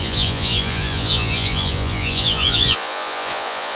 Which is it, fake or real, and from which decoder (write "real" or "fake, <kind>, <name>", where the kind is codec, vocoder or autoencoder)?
fake, vocoder, Vocos